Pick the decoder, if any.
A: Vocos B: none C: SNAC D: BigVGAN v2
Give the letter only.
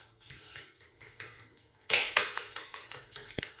C